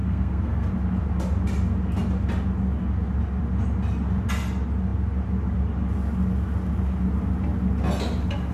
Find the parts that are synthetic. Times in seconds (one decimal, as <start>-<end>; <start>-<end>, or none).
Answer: 0.0-0.7